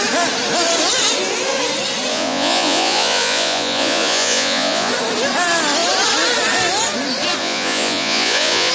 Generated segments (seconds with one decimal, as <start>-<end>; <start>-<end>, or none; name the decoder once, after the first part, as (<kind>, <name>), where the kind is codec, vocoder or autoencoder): 2.1-4.9 (vocoder, Vocos); 7.4-8.7